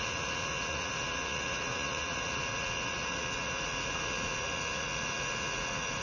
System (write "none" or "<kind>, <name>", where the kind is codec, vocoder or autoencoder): vocoder, Vocos